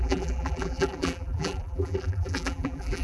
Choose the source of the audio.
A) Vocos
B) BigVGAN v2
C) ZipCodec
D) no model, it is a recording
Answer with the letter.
B